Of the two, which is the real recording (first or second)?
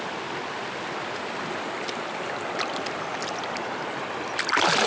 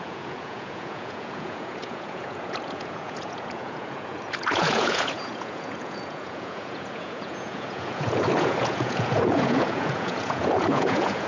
first